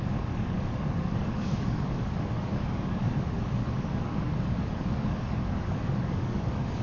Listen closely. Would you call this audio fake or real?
fake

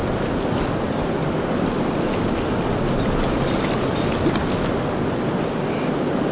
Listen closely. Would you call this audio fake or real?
real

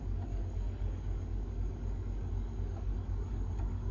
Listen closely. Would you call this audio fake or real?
fake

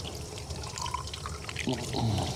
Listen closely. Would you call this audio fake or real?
real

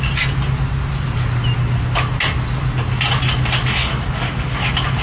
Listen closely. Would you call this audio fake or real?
real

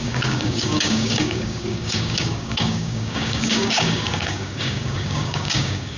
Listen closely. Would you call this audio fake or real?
fake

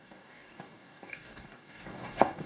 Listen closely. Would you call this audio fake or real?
fake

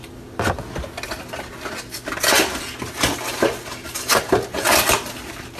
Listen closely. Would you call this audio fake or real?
real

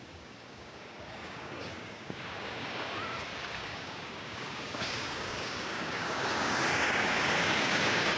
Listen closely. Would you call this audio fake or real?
fake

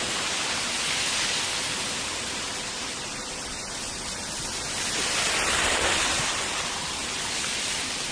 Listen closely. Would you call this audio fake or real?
real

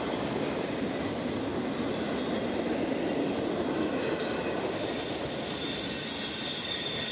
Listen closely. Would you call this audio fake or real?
real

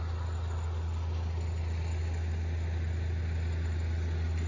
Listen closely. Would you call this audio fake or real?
real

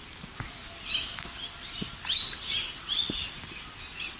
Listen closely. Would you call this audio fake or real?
real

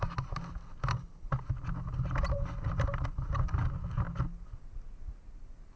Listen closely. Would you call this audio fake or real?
real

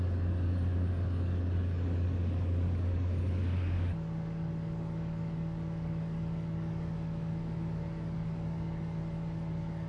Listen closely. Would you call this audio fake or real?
fake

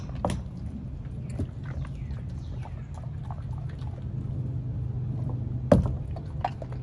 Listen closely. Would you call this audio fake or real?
real